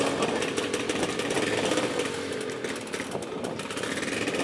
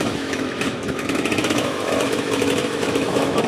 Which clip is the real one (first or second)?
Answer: first